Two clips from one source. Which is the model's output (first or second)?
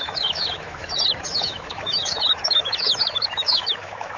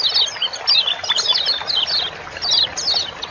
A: first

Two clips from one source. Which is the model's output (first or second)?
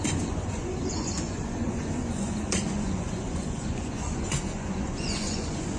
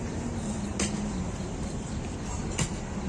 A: first